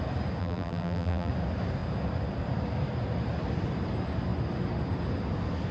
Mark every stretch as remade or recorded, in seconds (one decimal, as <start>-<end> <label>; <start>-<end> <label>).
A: 0.0-0.4 recorded; 0.4-1.3 remade; 1.3-5.7 recorded

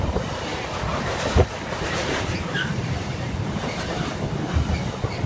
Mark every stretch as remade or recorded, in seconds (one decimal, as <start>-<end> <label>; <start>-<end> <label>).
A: 0.0-0.9 recorded; 0.9-4.1 remade; 4.1-5.3 recorded

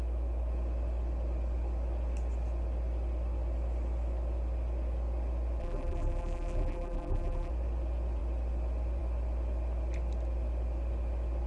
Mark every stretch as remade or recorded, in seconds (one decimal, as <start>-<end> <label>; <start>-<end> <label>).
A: 0.0-5.6 recorded; 5.6-7.5 remade; 7.5-11.5 recorded

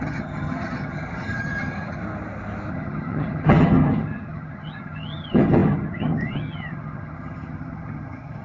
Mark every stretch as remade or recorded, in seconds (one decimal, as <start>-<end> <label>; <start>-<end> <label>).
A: 0.0-2.0 remade; 2.0-2.7 recorded; 2.7-8.4 remade